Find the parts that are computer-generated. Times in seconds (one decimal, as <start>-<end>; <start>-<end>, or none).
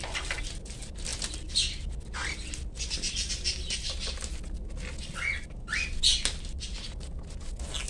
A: none